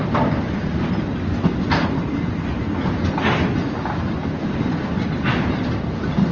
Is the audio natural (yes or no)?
yes